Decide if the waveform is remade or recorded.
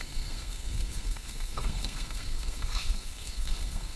remade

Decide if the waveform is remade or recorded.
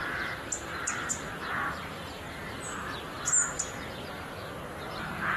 remade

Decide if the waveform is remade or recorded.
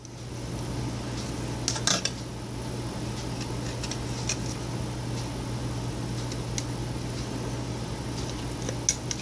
recorded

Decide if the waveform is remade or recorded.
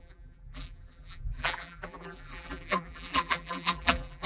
remade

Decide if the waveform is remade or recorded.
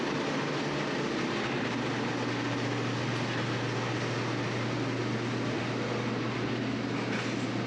recorded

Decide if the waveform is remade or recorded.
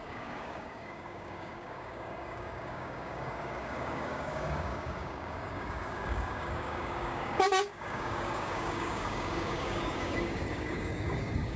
remade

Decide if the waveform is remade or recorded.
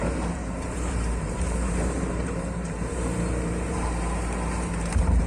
remade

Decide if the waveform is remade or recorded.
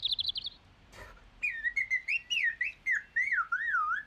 recorded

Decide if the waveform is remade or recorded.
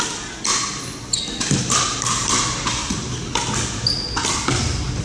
recorded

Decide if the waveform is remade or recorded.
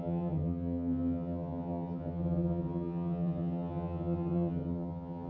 remade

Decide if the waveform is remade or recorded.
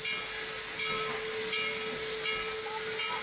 recorded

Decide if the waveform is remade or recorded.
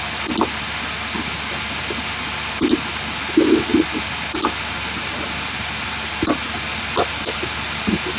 recorded